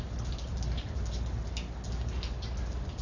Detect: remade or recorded recorded